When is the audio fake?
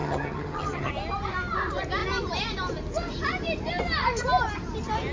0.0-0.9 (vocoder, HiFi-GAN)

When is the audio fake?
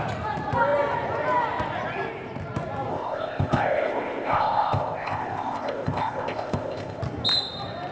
2.9-7.0 (codec, ZipCodec)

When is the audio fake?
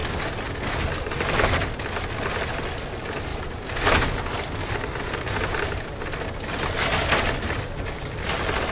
none